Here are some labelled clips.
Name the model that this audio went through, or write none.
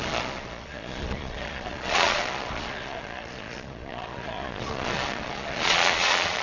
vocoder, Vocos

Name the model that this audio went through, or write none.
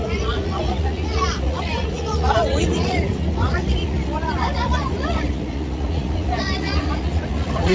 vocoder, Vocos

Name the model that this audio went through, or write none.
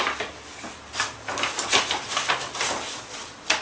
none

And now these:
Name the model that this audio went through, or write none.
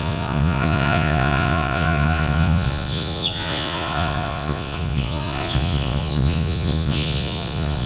vocoder, Vocos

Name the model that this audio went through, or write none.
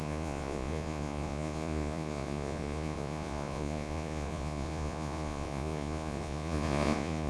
vocoder, Vocos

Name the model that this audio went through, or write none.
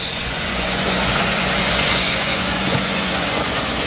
vocoder, Vocos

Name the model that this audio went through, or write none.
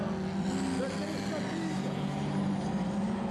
none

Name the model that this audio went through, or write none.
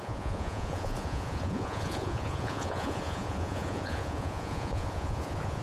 vocoder, Vocos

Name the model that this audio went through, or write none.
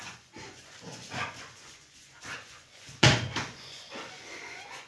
vocoder, Vocos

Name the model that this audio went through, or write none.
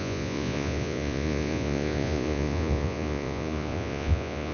vocoder, Vocos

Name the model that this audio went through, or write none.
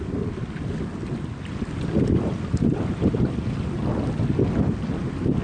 none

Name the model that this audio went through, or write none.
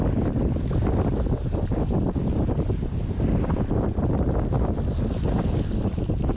none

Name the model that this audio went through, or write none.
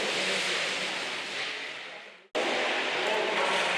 none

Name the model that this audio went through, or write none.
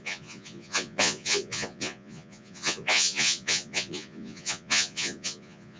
vocoder, Vocos